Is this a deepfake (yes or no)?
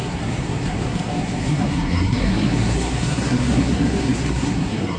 yes